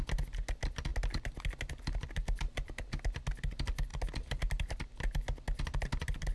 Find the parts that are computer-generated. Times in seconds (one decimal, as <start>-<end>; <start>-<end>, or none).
none